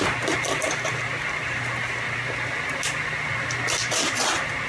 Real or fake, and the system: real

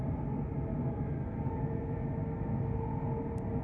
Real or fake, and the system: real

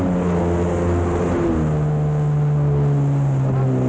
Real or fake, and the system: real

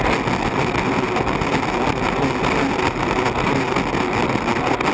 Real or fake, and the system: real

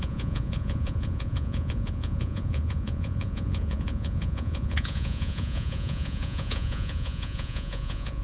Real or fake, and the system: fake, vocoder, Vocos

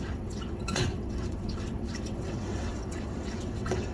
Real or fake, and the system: fake, vocoder, WaveNeXt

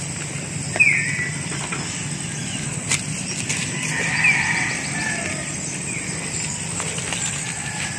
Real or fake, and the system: real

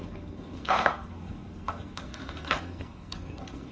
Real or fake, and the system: fake, codec, SNAC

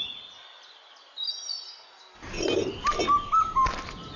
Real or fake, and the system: real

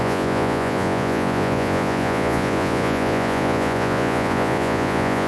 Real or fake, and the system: fake, vocoder, Vocos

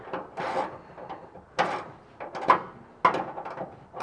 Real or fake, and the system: real